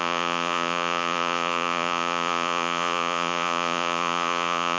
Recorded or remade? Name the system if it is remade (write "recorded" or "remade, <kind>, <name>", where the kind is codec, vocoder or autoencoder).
remade, vocoder, Vocos